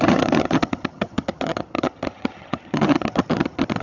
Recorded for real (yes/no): no